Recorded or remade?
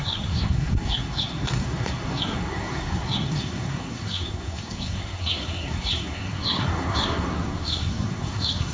remade